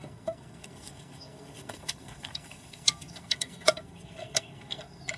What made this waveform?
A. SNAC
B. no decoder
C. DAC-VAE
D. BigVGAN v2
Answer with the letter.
A